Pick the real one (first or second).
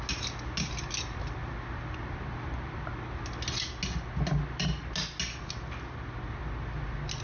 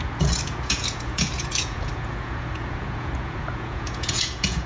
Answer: first